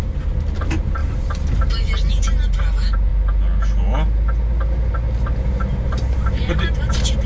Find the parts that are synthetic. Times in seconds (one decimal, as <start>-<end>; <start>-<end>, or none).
none